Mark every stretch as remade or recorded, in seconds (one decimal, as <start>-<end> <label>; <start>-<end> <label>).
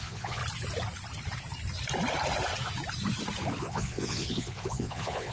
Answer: 0.0-0.4 remade; 0.4-3.6 recorded; 3.6-5.3 remade